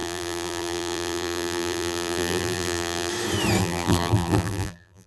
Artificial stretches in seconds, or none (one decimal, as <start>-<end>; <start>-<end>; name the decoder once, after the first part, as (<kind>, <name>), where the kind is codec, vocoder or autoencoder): 0.0-3.1 (vocoder, BigVGAN v2); 3.6-5.1